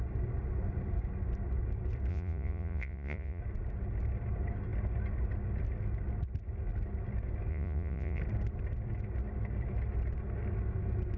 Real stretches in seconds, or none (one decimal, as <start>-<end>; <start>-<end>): 0.0-2.1; 3.4-7.5; 8.2-11.2